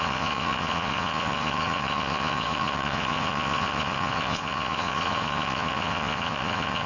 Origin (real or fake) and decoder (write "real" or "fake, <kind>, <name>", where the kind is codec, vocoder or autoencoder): fake, vocoder, Vocos